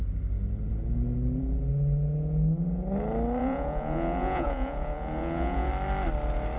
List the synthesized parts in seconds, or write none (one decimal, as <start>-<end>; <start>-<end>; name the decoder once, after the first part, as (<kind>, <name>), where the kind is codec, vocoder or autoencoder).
3.4-5.7 (vocoder, Vocos)